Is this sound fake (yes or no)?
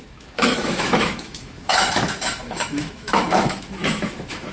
yes